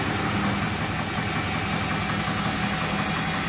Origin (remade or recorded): recorded